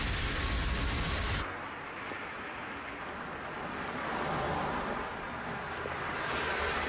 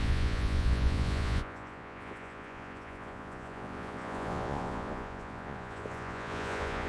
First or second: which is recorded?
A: first